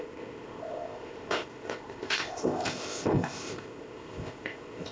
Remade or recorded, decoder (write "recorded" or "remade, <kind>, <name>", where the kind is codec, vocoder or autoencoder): remade, codec, ZipCodec